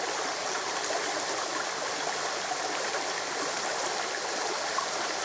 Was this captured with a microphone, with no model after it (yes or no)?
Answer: yes